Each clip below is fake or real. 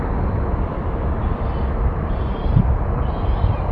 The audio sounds fake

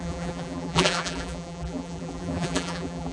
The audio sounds fake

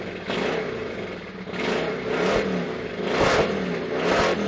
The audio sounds real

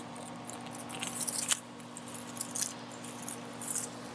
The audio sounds real